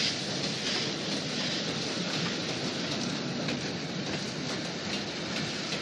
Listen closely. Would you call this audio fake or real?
real